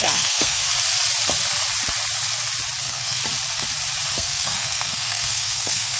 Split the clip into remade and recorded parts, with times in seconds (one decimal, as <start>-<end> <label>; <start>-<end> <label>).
0.0-0.7 remade; 0.7-2.8 recorded; 2.8-3.2 remade; 3.2-4.1 recorded; 4.1-6.0 remade